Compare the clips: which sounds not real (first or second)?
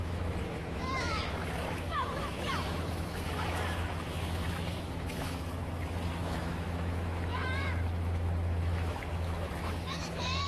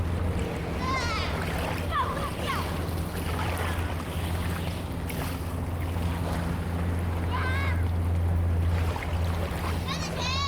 first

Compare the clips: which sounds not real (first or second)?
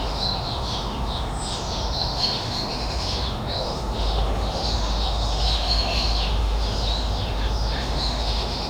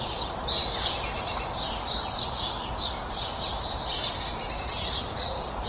first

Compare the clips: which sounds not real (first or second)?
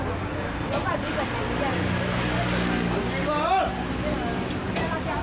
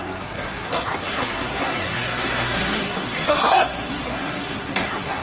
second